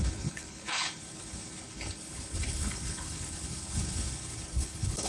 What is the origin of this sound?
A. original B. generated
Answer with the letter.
B